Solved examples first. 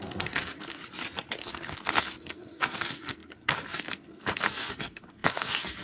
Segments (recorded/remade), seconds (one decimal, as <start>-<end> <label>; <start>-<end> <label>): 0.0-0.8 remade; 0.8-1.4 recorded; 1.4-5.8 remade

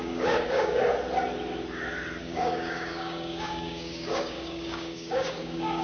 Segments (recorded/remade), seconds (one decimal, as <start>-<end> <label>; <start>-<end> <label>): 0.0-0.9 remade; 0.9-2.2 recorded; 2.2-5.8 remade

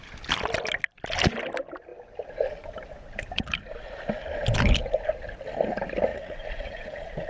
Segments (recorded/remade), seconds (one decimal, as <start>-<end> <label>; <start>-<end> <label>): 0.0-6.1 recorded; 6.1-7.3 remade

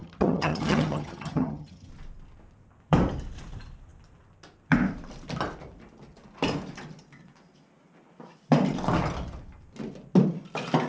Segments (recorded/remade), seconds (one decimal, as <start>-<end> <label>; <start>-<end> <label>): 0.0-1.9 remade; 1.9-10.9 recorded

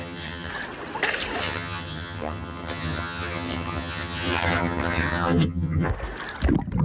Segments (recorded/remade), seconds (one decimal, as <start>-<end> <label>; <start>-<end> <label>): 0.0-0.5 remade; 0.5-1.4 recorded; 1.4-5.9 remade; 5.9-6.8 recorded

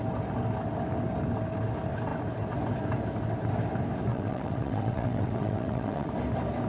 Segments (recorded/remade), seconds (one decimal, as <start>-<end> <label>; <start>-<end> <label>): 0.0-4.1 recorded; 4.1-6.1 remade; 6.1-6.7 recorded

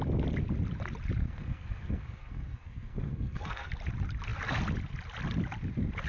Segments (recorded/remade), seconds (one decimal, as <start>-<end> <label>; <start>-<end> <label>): 0.0-1.2 recorded; 1.2-3.7 remade; 3.7-6.1 recorded

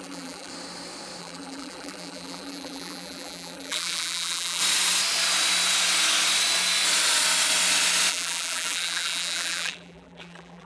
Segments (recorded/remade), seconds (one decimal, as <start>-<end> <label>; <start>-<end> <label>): 0.0-0.5 remade; 0.5-1.2 recorded; 1.2-4.6 remade; 4.6-8.1 recorded; 8.1-10.7 remade